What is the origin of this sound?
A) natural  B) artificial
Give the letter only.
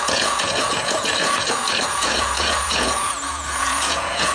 B